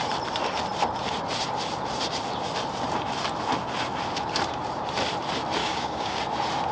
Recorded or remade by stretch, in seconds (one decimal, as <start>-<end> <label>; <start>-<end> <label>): 0.0-5.6 recorded; 5.6-6.2 remade; 6.2-6.7 recorded